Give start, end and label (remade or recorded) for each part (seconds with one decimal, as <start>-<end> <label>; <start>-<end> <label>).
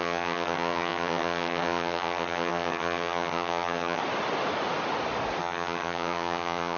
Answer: 0.0-4.0 remade; 4.0-5.4 recorded; 5.4-6.8 remade